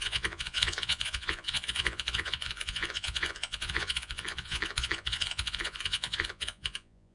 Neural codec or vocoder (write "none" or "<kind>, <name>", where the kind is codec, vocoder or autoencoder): vocoder, Vocos